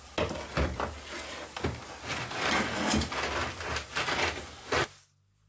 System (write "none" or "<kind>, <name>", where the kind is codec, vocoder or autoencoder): none